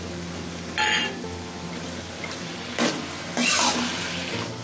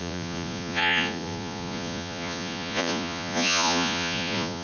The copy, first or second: second